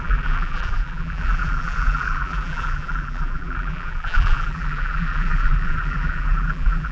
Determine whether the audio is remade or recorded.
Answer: remade